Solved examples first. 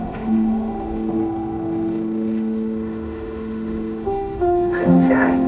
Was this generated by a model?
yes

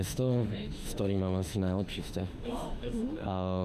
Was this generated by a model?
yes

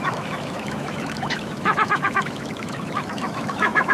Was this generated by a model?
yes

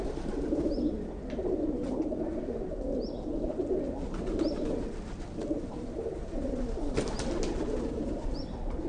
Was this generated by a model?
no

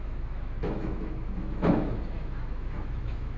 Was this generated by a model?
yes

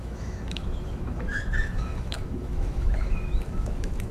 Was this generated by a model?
yes